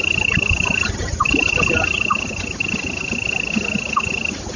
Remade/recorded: recorded